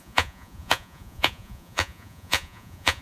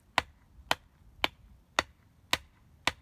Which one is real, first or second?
second